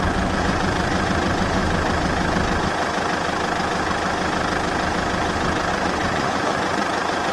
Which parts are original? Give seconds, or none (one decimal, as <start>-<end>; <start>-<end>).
1.6-5.7